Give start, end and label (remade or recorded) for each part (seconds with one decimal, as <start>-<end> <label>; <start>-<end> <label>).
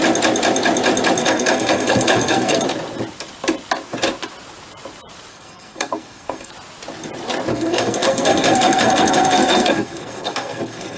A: 0.0-1.2 recorded; 1.2-2.6 remade; 2.6-5.3 recorded; 5.3-6.5 remade; 6.5-7.5 recorded; 7.5-11.0 remade